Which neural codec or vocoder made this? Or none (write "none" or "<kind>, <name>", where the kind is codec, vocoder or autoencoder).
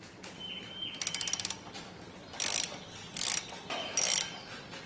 none